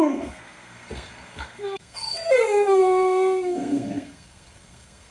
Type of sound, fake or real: fake